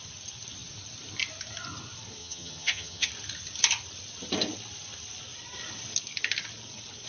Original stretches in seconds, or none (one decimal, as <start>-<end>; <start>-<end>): 0.0-2.2; 3.1-7.1